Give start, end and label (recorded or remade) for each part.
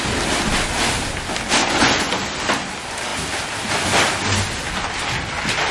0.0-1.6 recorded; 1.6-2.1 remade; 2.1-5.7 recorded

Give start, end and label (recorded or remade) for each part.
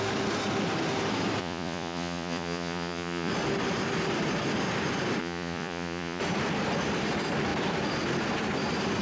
0.0-1.4 recorded; 1.4-3.3 remade; 3.3-5.2 recorded; 5.2-6.2 remade; 6.2-9.0 recorded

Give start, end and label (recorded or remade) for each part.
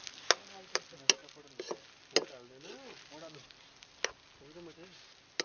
0.0-5.4 recorded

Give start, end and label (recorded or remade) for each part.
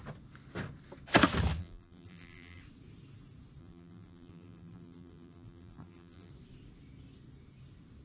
0.0-1.6 recorded; 1.6-2.6 remade; 2.6-3.6 recorded; 3.6-6.3 remade; 6.3-8.0 recorded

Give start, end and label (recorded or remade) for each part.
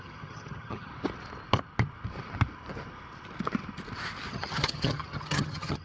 0.0-0.9 remade; 0.9-4.3 recorded; 4.3-5.8 remade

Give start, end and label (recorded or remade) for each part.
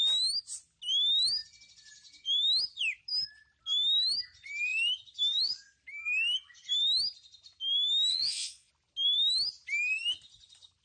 0.0-8.1 recorded; 8.1-8.7 remade; 8.7-10.8 recorded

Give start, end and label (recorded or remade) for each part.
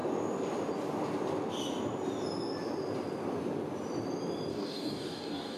0.0-4.5 recorded; 4.5-5.6 remade